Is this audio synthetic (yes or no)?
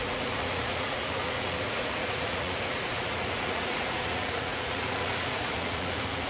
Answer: yes